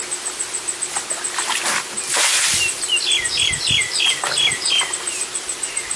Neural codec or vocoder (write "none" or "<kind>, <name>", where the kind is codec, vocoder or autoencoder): none